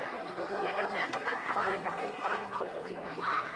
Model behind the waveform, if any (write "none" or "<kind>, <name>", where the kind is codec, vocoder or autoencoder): codec, SNAC